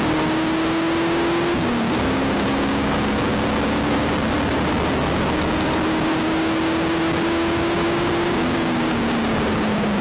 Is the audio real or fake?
real